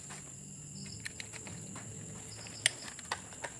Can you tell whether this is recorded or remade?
recorded